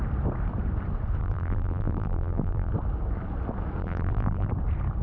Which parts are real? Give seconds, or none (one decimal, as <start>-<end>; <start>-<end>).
0.0-1.2; 2.7-3.8; 4.5-5.0